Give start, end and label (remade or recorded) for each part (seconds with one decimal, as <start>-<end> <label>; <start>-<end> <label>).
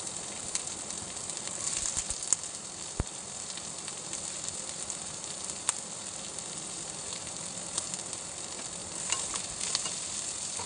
0.0-10.7 recorded